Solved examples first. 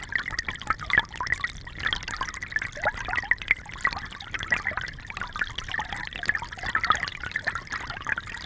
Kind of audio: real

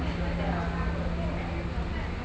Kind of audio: real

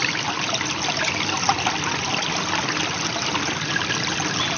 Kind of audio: real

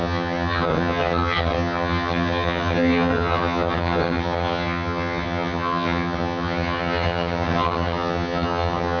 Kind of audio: fake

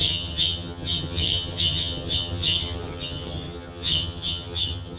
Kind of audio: fake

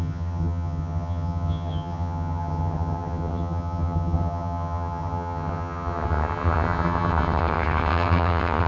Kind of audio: fake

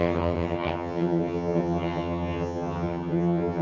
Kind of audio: fake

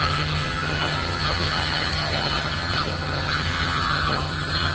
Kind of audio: fake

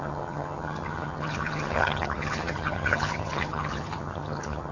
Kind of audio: fake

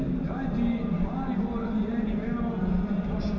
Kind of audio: real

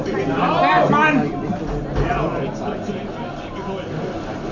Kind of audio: real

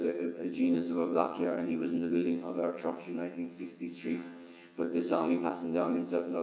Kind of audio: fake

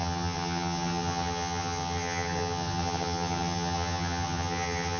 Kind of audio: fake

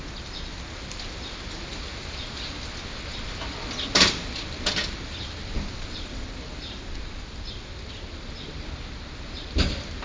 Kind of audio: real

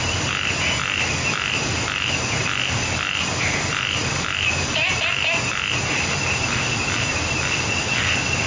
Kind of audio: real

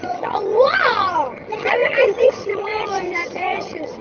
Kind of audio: fake